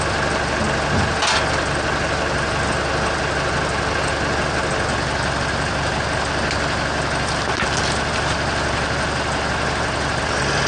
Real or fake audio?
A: real